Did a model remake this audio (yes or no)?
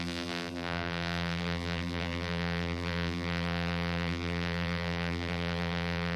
yes